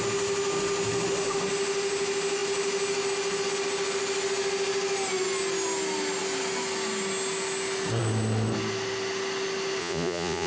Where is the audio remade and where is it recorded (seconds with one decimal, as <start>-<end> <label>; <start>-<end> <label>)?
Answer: 0.0-9.8 recorded; 9.8-10.5 remade